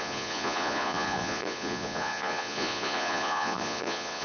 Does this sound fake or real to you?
fake